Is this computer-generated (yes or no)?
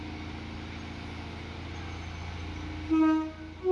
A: no